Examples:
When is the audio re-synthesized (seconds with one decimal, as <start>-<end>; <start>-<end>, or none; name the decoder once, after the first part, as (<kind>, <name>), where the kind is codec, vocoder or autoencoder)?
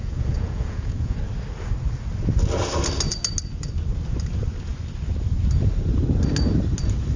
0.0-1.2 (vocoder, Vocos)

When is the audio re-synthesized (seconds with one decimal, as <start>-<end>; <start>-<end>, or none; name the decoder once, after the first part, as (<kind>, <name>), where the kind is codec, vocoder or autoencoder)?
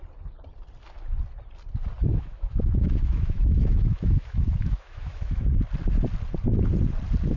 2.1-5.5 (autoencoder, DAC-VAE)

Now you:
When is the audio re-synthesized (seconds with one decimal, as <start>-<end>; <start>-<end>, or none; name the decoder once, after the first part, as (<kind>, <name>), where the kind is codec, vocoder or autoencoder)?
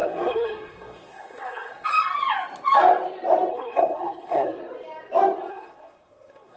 0.0-1.9 (codec, SNAC); 3.5-4.6; 5.5-6.6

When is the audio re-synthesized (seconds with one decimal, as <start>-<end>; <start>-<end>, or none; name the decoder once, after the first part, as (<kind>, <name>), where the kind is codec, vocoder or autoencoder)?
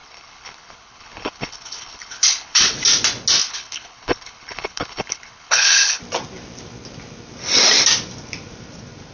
0.0-2.6 (codec, HILCodec); 3.4-6.0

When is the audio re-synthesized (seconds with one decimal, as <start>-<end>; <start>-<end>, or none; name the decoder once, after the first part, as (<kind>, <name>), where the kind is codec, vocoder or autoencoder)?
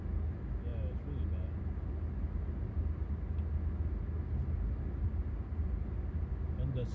none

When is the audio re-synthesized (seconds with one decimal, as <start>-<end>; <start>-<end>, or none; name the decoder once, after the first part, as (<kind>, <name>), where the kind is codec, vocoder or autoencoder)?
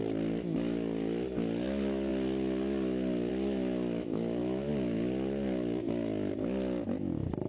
none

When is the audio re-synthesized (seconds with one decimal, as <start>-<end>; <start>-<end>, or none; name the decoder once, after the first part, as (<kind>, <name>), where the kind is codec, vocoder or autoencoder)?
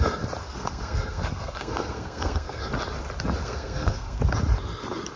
0.4-2.6 (codec, SNAC); 3.4-4.2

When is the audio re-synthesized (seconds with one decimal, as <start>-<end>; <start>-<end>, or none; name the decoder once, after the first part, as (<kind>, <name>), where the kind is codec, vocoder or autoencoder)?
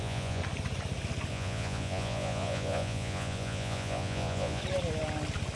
0.0-0.4 (vocoder, Vocos); 1.3-4.6